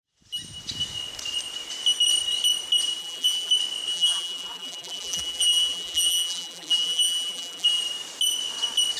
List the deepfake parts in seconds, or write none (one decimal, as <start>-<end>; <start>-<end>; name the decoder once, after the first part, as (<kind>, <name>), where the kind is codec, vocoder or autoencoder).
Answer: 3.0-3.5 (vocoder, BigVGAN v2); 3.9-7.8